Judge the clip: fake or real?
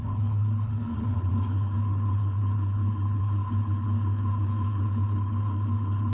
fake